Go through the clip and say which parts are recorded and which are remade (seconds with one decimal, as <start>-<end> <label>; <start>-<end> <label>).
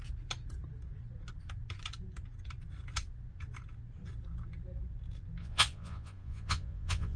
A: 0.0-5.4 recorded; 5.4-7.2 remade